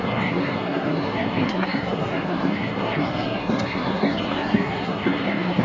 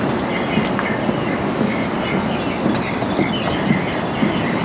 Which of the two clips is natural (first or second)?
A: second